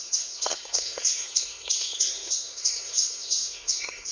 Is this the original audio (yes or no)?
no